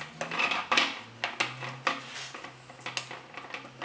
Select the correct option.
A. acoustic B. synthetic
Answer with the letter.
A